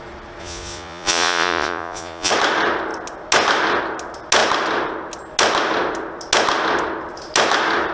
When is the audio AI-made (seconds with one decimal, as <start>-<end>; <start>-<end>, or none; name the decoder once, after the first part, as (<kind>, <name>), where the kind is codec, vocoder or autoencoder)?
0.4-2.3 (vocoder, Vocos)